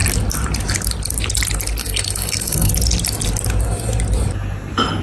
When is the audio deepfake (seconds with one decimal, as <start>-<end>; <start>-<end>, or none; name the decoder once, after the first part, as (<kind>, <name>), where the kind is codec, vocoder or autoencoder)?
1.8-2.7 (codec, SNAC)